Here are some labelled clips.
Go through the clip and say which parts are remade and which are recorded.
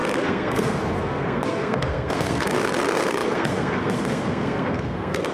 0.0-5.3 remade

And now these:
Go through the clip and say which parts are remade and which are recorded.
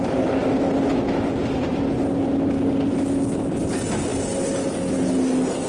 0.0-5.7 recorded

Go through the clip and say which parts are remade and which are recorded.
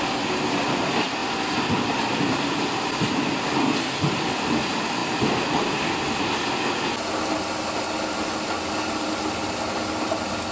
0.0-10.5 recorded